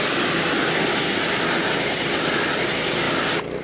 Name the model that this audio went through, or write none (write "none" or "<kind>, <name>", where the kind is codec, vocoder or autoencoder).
none